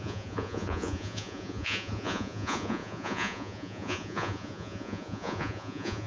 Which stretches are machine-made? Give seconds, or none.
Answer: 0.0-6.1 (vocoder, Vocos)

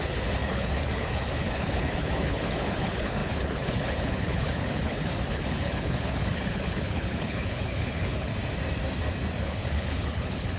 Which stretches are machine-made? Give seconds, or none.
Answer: 0.0-8.3 (codec, HILCodec); 9.4-10.6

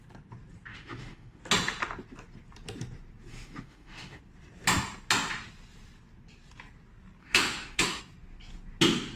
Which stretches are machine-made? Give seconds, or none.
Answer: 0.7-1.4 (autoencoder, DAC-VAE); 3.3-4.2; 7.2-8.0

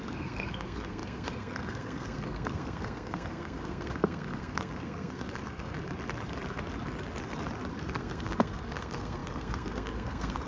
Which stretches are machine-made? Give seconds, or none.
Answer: 0.0-5.7 (codec, SNAC); 7.7-10.5

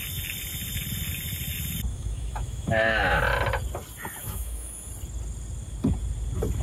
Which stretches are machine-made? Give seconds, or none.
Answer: 1.9-3.2 (autoencoder, DAC-VAE); 4.2-4.9

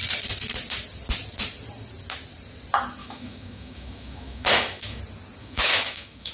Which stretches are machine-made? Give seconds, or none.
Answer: 3.0-5.0 (autoencoder, DAC-VAE); 5.4-6.3